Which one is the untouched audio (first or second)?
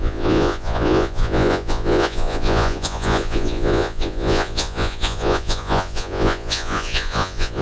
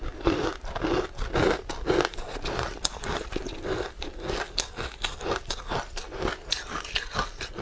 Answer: second